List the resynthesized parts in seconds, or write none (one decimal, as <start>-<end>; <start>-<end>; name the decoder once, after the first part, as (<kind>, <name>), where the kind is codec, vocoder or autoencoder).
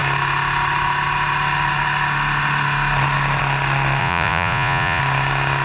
4.0-5.0 (vocoder, Vocos)